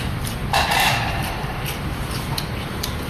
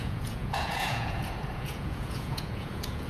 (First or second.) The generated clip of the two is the second